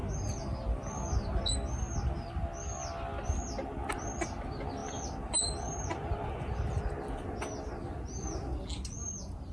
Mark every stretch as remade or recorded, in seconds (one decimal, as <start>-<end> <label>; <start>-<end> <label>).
0.0-4.8 recorded; 4.8-6.8 remade; 6.8-9.5 recorded